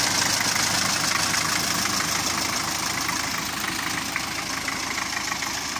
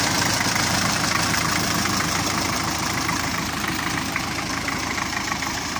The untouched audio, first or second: first